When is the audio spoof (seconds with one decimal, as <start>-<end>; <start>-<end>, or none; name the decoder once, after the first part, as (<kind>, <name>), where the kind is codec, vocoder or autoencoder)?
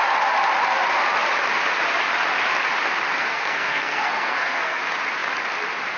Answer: 3.2-4.8 (codec, SNAC)